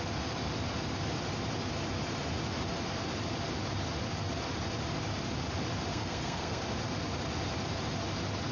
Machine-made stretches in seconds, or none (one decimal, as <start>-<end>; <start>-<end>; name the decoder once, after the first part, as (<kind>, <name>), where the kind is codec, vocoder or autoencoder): 5.9-6.6 (codec, SNAC)